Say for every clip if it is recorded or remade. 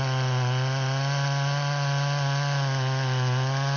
recorded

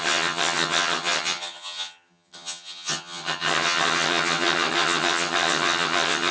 remade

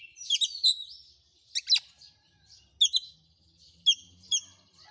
recorded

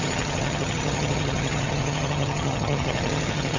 remade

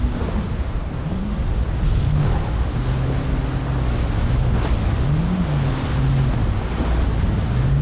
recorded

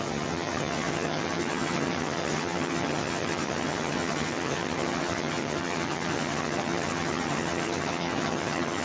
remade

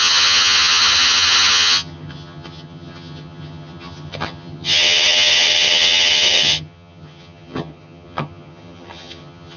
remade